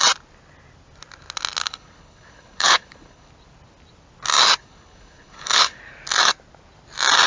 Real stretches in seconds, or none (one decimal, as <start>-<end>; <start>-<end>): 0.0-1.6; 3.3-4.6; 5.8-7.3